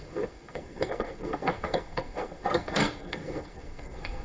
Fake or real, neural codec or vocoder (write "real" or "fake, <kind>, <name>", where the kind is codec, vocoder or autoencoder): fake, codec, SNAC